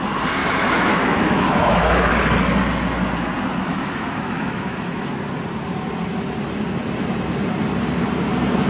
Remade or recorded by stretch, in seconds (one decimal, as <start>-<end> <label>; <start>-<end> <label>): 0.0-0.4 recorded; 0.4-2.1 remade; 2.1-3.7 recorded; 3.7-5.1 remade; 5.1-8.7 recorded

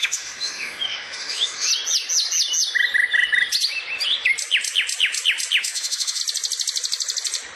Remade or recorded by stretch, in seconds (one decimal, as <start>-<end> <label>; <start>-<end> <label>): 0.0-1.7 remade; 1.7-5.6 recorded; 5.6-6.2 remade; 6.2-7.6 recorded

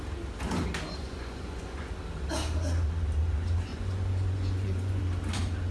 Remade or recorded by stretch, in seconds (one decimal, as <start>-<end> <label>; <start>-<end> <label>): 0.0-1.0 recorded; 1.0-1.9 remade; 1.9-3.7 recorded; 3.7-5.0 remade; 5.0-5.7 recorded